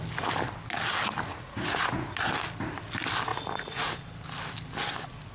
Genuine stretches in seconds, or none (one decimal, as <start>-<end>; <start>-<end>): 0.0-1.3; 2.3-3.3; 3.9-5.3

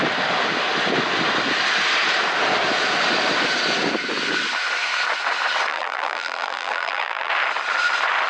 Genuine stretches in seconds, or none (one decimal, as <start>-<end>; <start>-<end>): 0.0-5.7; 7.3-8.3

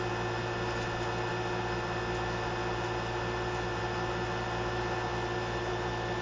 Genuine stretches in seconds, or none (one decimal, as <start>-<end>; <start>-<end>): 0.0-6.2

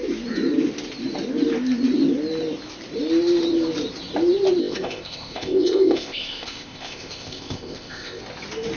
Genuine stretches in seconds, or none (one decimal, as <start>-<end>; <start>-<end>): 0.0-4.6; 8.2-8.8